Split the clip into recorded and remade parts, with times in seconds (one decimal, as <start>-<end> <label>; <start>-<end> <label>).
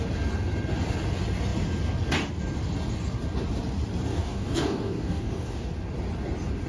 0.0-4.1 recorded; 4.1-5.7 remade; 5.7-6.7 recorded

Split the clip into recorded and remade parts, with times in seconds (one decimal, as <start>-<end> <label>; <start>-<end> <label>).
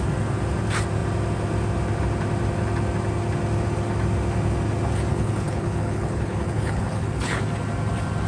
0.0-5.1 recorded; 5.1-7.4 remade; 7.4-8.3 recorded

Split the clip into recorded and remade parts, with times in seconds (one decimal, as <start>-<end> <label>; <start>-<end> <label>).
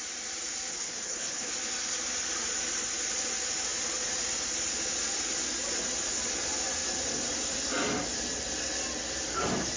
0.0-0.7 recorded; 0.7-1.5 remade; 1.5-9.8 recorded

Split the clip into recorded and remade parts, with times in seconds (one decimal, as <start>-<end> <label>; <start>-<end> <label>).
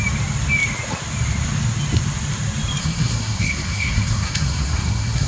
0.0-2.8 recorded; 2.8-5.3 remade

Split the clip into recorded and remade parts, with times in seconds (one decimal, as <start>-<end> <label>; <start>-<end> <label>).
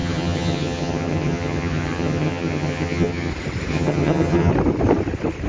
0.0-3.3 remade; 3.3-3.7 recorded; 3.7-4.5 remade; 4.5-5.5 recorded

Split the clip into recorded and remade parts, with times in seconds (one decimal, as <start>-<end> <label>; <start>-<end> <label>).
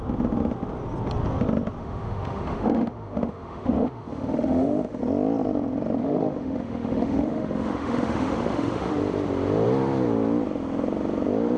0.0-1.8 recorded; 1.8-5.0 remade; 5.0-6.0 recorded; 6.0-9.0 remade; 9.0-11.6 recorded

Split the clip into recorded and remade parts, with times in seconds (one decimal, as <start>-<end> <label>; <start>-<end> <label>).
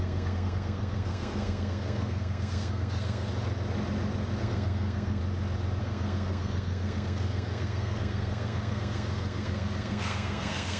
0.0-3.3 remade; 3.3-4.4 recorded; 4.4-5.2 remade; 5.2-5.8 recorded; 5.8-10.8 remade